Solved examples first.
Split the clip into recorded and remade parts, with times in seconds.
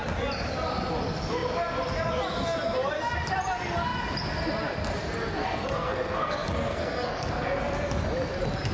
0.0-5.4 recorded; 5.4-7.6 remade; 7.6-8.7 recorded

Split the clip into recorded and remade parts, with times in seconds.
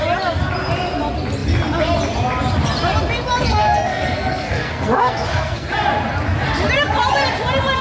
0.0-3.5 recorded; 3.5-5.7 remade; 5.7-7.8 recorded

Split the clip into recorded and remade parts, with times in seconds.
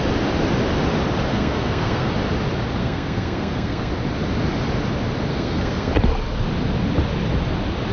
0.0-1.3 recorded; 1.3-2.1 remade; 2.1-2.8 recorded; 2.8-3.9 remade; 3.9-5.3 recorded; 5.3-5.9 remade; 5.9-7.9 recorded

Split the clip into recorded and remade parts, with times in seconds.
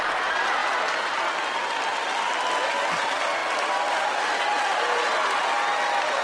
0.0-6.2 recorded